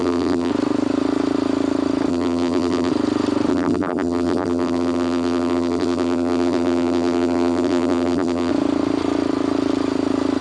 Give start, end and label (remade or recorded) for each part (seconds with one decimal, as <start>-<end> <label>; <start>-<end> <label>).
0.0-0.5 remade; 0.5-2.1 recorded; 2.1-2.9 remade; 2.9-3.5 recorded; 3.5-8.5 remade; 8.5-10.4 recorded